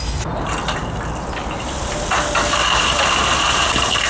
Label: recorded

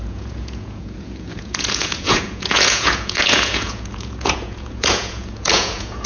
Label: remade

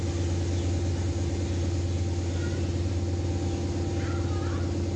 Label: recorded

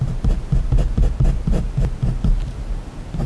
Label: recorded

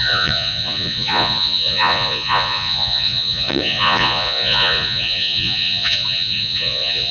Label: remade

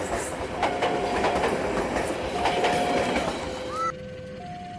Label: recorded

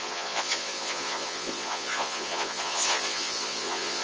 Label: remade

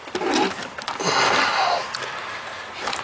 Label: recorded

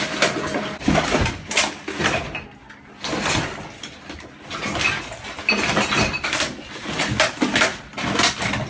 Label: recorded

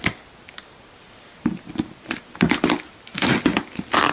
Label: recorded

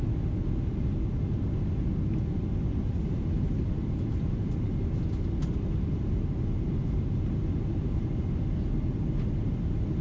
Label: recorded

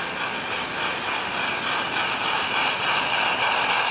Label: recorded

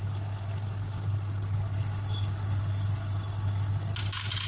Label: recorded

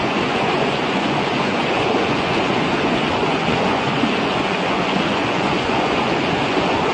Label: remade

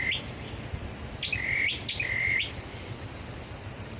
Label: recorded